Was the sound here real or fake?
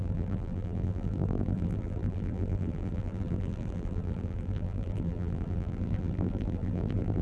fake